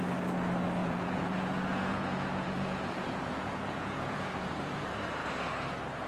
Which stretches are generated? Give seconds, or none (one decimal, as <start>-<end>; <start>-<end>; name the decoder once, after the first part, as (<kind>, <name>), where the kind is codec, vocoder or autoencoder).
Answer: 0.8-4.5 (vocoder, Vocos)